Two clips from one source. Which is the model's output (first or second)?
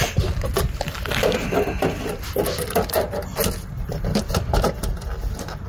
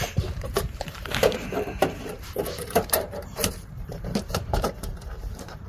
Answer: second